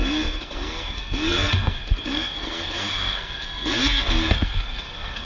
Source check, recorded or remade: remade